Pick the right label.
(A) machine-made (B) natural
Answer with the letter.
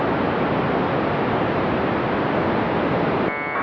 B